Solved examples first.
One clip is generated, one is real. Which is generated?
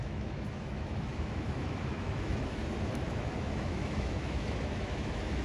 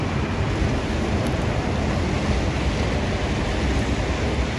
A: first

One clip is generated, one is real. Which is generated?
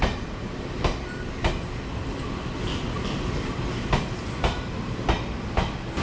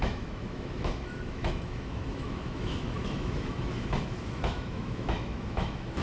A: second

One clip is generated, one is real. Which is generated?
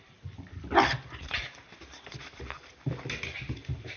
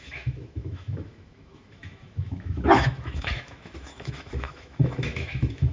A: second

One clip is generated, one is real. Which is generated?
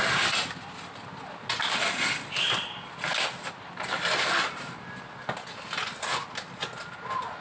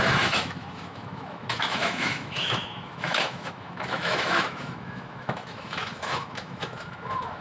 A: second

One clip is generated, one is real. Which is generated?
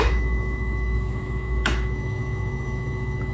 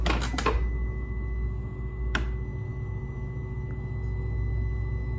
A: first